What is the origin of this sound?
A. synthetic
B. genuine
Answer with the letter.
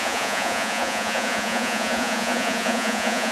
A